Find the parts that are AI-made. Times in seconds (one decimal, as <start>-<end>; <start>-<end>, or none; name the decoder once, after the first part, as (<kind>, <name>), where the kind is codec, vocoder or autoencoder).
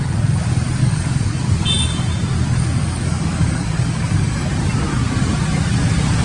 0.8-1.5 (codec, DAC); 2.8-4.5